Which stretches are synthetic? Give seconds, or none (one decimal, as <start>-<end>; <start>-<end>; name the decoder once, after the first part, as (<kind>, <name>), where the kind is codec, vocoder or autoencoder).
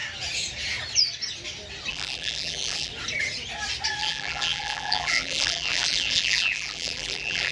1.9-2.9 (vocoder, BigVGAN v2); 4.0-7.5